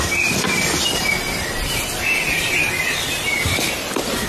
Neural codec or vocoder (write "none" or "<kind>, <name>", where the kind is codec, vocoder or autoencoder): none